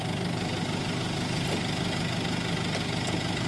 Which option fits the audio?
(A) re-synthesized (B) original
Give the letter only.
B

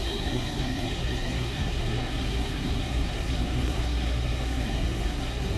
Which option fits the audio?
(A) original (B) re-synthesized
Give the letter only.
B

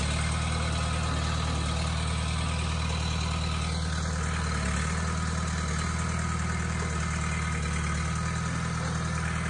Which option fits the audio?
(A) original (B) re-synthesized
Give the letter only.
A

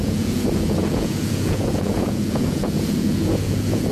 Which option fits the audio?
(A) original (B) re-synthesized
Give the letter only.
B